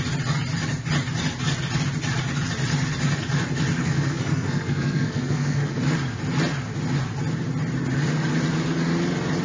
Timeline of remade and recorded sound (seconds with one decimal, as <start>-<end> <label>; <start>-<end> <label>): 0.0-3.8 recorded; 3.8-5.8 remade; 5.8-9.4 recorded